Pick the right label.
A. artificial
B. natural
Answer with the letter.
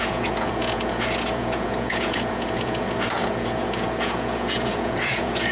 A